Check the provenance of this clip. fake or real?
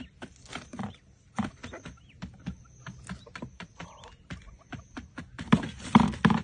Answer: real